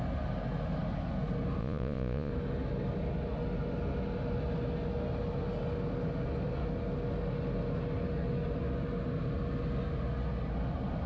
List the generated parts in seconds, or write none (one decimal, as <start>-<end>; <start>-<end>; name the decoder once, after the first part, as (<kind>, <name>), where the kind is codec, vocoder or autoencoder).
1.6-2.3 (vocoder, Vocos)